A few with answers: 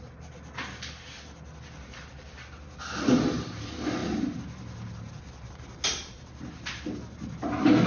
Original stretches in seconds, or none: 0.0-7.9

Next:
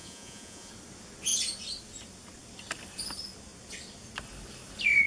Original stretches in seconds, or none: 0.7-5.1

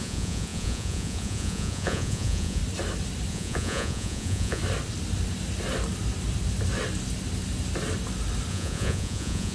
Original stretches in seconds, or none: 2.6-3.3; 4.6-8.5

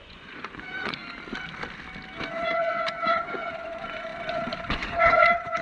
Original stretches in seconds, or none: 1.0-2.3